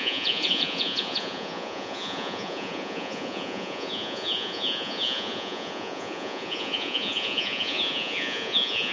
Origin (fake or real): fake